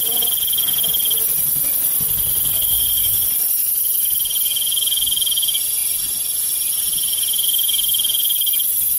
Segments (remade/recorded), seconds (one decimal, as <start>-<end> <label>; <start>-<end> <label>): 0.0-9.0 recorded